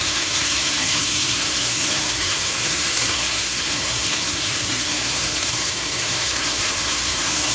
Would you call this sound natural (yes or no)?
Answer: no